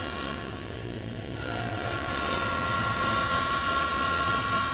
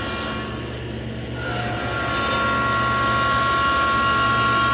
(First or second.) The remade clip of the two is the first